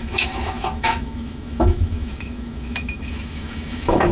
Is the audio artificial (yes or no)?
yes